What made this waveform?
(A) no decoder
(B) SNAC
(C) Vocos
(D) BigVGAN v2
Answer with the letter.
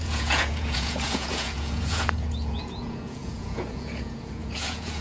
C